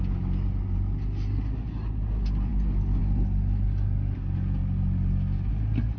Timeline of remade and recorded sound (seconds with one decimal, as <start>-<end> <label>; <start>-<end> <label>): 0.0-6.0 recorded